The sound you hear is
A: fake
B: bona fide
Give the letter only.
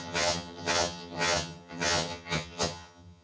A